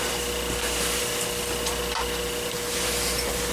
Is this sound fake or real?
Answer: real